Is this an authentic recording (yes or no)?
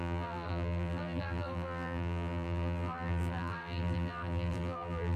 no